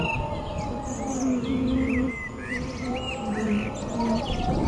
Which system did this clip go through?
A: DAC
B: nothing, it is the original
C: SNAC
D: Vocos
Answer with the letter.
B